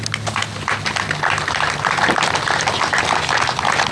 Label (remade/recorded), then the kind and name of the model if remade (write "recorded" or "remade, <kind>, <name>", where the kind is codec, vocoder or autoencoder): recorded